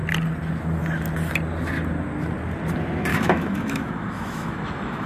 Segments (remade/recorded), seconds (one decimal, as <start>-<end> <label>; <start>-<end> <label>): 0.0-3.1 recorded; 3.1-5.1 remade